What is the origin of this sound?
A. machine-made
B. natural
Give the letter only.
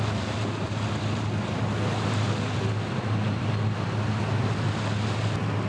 B